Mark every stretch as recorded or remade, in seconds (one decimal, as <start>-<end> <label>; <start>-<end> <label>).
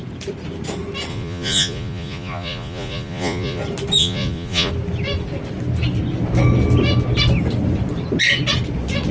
0.0-1.1 recorded; 1.1-3.6 remade; 3.6-4.0 recorded; 4.0-4.7 remade; 4.7-9.1 recorded